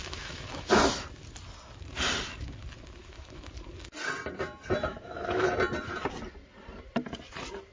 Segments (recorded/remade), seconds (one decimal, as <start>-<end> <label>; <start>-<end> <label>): 0.0-0.7 remade; 0.7-3.0 recorded; 3.0-3.5 remade; 3.5-4.9 recorded; 4.9-5.5 remade; 5.5-7.7 recorded